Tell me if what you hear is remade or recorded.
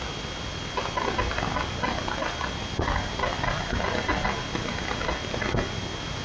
recorded